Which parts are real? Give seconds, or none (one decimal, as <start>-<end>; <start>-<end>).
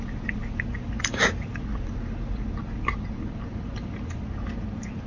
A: 0.0-5.1